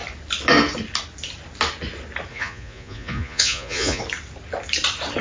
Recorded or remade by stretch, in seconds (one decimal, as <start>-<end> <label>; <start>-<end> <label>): 0.0-2.3 recorded; 2.3-4.0 remade; 4.0-5.2 recorded

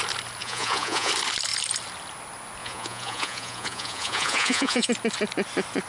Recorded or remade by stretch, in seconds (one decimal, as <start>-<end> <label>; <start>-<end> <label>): 0.0-0.4 recorded; 0.4-1.1 remade; 1.1-2.6 recorded; 2.6-4.9 remade; 4.9-5.9 recorded

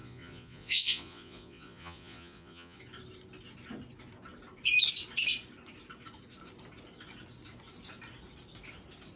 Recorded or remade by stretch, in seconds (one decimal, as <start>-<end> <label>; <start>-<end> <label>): 0.0-2.8 remade; 2.8-9.2 recorded

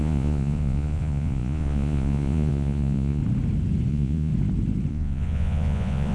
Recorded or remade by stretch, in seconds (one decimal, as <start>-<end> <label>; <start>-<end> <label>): 0.0-3.2 remade; 3.2-3.9 recorded; 3.9-4.3 remade; 4.3-4.9 recorded; 4.9-6.1 remade